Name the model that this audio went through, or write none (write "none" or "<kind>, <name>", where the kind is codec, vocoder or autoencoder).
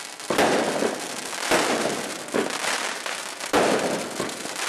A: none